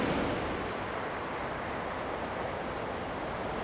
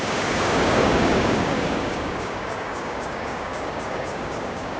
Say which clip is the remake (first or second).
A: second